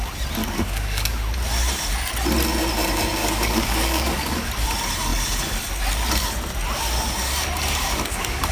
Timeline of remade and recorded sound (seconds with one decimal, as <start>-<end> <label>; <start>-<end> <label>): 0.0-0.4 recorded; 0.4-1.2 remade; 1.2-3.2 recorded; 3.2-4.5 remade; 4.5-7.8 recorded; 7.8-8.5 remade